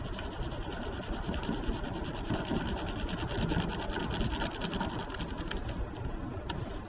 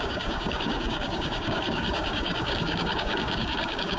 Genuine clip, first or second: first